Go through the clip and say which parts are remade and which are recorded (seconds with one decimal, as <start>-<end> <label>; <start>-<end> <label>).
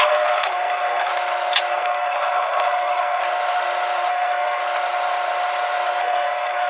0.0-1.1 remade; 1.1-1.7 recorded; 1.7-3.2 remade; 3.2-4.1 recorded; 4.1-4.6 remade; 4.6-6.0 recorded; 6.0-6.7 remade